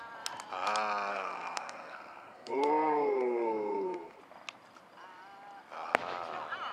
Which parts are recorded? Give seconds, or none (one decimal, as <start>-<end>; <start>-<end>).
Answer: 0.0-1.1; 4.2-6.7